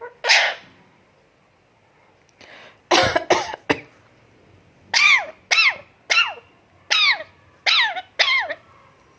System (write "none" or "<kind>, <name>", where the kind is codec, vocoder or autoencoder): none